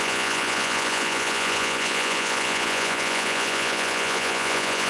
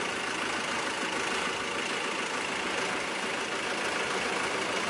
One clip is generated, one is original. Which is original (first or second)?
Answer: second